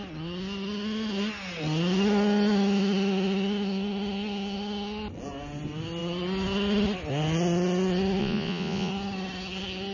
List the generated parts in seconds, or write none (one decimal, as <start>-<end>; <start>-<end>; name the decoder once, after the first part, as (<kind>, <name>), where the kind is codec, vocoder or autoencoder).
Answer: 8.2-8.9 (vocoder, Vocos)